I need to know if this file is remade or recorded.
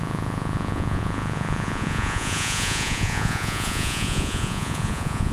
remade